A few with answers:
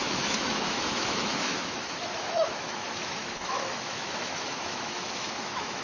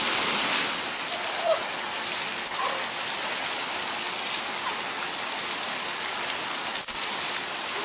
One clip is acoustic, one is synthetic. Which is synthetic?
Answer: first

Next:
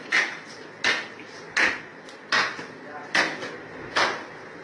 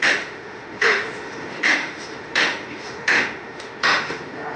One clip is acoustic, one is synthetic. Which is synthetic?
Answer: second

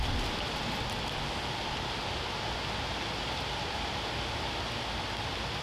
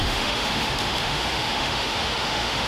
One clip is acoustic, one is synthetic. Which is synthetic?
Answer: second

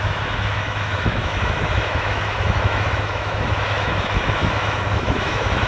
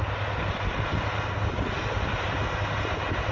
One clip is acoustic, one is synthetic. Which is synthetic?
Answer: first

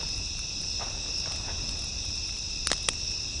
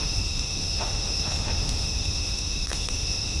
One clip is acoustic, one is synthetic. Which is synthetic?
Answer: second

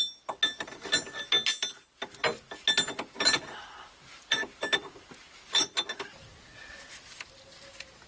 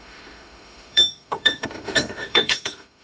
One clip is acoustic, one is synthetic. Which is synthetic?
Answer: second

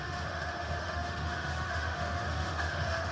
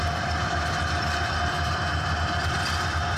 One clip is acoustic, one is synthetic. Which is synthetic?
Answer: first